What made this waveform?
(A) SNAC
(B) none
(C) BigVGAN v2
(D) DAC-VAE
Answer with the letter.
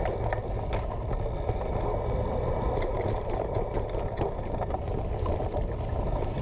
B